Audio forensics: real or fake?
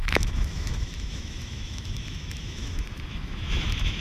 fake